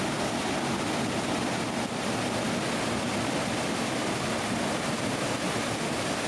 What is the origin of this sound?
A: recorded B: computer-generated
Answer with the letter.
A